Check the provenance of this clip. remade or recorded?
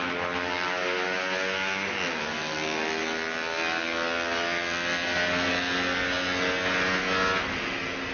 recorded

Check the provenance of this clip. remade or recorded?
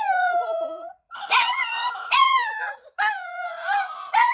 remade